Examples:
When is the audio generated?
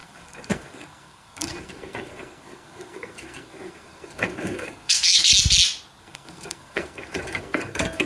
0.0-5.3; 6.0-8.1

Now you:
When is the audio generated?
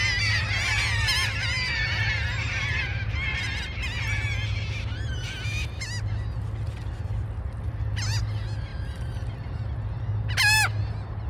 none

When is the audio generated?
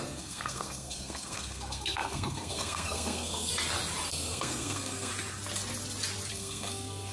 0.0-3.5; 4.1-5.1; 6.3-7.1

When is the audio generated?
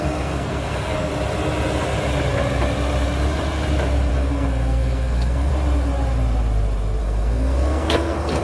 0.0-1.1; 4.1-5.5; 7.0-8.4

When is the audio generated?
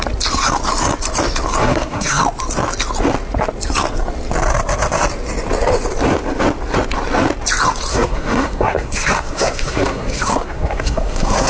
1.6-2.2; 7.9-11.5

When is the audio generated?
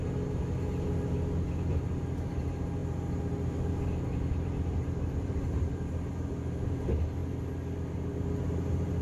none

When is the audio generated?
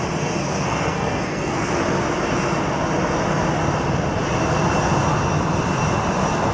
0.4-1.8